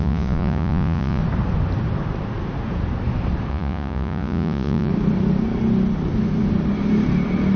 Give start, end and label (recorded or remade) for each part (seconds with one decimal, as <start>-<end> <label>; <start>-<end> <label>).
0.0-1.2 remade; 1.2-3.5 recorded; 3.5-4.9 remade; 4.9-7.6 recorded